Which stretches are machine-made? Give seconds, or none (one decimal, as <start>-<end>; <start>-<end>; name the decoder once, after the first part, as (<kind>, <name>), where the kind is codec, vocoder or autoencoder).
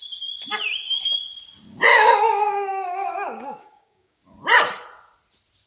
1.9-4.2 (codec, DAC)